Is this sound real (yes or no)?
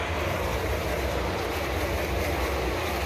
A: yes